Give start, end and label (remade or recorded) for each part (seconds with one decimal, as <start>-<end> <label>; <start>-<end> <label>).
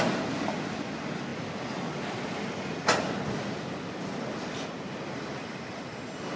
0.0-6.4 recorded